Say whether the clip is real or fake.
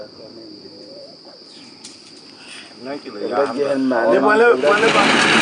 real